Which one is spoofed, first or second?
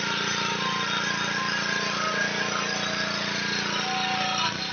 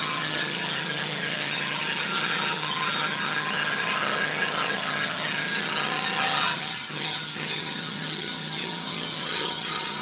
second